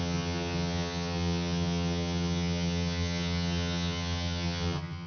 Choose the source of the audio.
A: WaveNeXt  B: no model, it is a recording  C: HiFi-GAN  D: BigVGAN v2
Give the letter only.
C